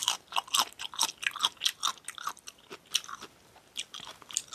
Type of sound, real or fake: real